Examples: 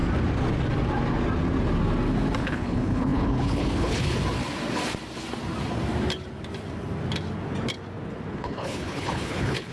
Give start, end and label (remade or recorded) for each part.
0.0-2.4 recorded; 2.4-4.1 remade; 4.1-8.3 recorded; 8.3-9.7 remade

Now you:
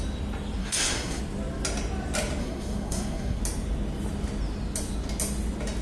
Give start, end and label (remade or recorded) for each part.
0.0-0.6 recorded; 0.6-1.2 remade; 1.2-2.4 recorded; 2.4-3.4 remade; 3.4-5.8 recorded

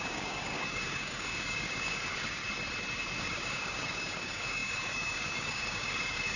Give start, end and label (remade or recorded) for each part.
0.0-2.4 remade; 2.4-3.2 recorded; 3.2-6.4 remade

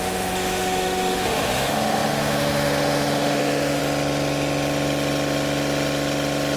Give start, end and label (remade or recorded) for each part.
0.0-3.8 remade; 3.8-6.6 recorded

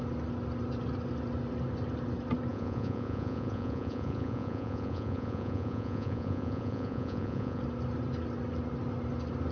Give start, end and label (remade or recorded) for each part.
0.0-2.5 recorded; 2.5-7.6 remade; 7.6-9.5 recorded

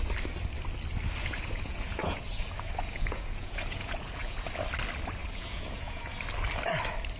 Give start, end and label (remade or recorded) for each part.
0.0-1.2 recorded; 1.2-4.5 remade; 4.5-5.2 recorded; 5.2-6.2 remade; 6.2-7.2 recorded